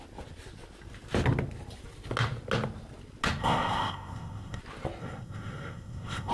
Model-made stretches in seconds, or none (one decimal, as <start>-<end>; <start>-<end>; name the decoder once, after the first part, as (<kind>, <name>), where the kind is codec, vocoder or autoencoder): 3.4-4.6 (codec, SNAC); 5.0-6.3